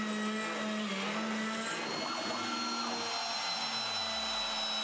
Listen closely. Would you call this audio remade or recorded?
recorded